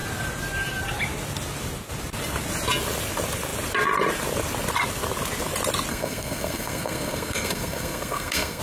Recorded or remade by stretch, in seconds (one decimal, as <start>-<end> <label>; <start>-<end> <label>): 0.0-5.9 recorded; 5.9-8.6 remade

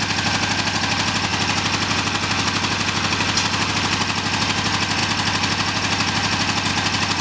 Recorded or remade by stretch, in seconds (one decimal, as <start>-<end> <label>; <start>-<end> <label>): 0.0-7.2 recorded

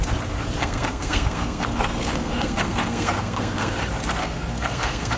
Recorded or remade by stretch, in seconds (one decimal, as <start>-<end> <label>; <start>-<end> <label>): 0.0-0.6 recorded; 0.6-3.7 remade; 3.7-4.2 recorded; 4.2-5.2 remade

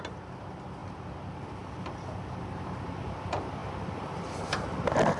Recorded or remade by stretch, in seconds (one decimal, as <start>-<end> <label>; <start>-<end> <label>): 0.0-5.2 recorded

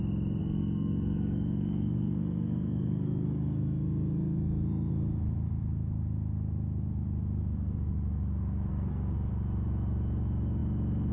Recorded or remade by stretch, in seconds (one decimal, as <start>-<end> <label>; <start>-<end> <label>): 0.0-0.4 recorded; 0.4-4.9 remade; 4.9-7.4 recorded; 7.4-7.9 remade; 7.9-8.7 recorded; 8.7-9.3 remade; 9.3-11.1 recorded